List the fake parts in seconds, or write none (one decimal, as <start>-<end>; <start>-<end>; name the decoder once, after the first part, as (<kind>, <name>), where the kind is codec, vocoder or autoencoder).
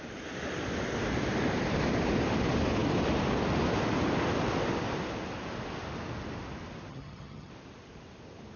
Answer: 6.9-7.5 (vocoder, HiFi-GAN)